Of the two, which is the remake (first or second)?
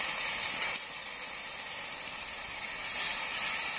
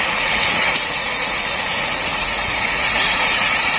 second